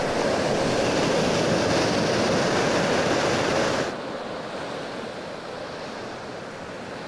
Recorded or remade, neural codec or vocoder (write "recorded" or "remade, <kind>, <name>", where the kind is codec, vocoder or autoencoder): recorded